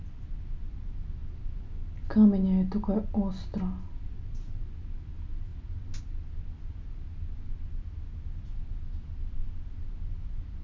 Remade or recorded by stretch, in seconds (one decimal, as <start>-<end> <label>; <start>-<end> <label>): 0.0-10.6 recorded